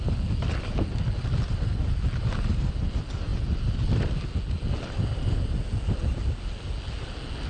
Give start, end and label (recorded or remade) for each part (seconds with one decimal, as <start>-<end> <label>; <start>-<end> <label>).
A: 0.0-7.5 recorded